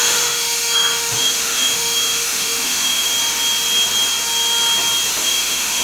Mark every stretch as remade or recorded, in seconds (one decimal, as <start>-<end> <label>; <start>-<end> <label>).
0.0-3.1 remade; 3.1-5.1 recorded; 5.1-5.8 remade